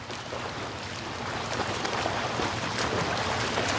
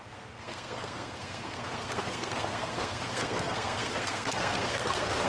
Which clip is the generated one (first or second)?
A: second